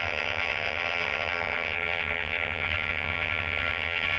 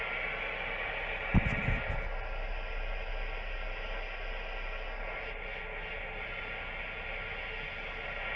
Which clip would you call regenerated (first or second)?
first